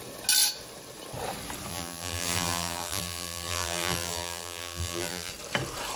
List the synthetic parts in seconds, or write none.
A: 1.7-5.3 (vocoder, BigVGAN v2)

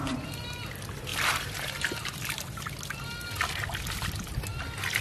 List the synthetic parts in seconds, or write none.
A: 1.1-2.7 (vocoder, BigVGAN v2)

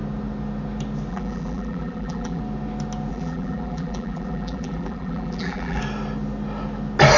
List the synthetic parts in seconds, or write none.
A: 1.1-2.4 (vocoder, BigVGAN v2); 3.1-5.8

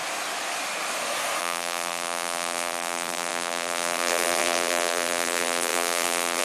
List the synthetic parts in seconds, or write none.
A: 1.4-6.4 (vocoder, BigVGAN v2)

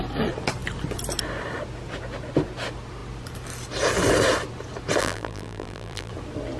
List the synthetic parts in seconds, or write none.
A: 5.0-6.1 (vocoder, BigVGAN v2)

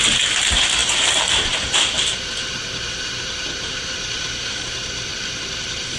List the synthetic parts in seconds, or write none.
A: 0.0-5.1 (vocoder, BigVGAN v2); 5.6-6.0

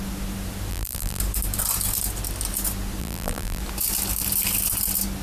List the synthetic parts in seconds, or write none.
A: 0.7-1.2 (vocoder, BigVGAN v2); 3.0-3.6

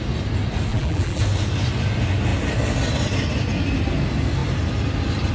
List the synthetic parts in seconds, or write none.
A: 0.7-1.2 (vocoder, BigVGAN v2)